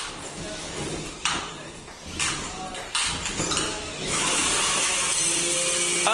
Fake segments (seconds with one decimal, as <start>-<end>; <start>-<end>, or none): 3.7-5.1